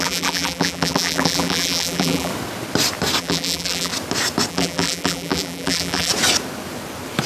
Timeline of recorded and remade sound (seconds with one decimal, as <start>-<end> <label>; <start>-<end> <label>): 0.0-2.3 remade; 2.3-3.2 recorded; 3.2-3.9 remade; 3.9-4.5 recorded; 4.5-6.1 remade; 6.1-7.3 recorded